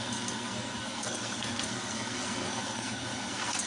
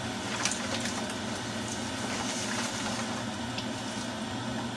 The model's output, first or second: first